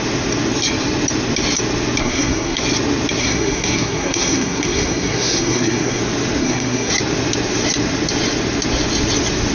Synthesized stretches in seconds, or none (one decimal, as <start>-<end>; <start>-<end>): 2.0-2.6; 3.2-6.0; 6.4-6.9